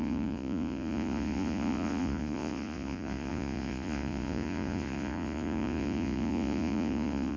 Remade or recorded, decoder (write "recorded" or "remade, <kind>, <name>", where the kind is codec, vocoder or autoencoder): remade, vocoder, Vocos